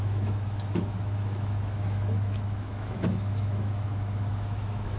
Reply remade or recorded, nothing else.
remade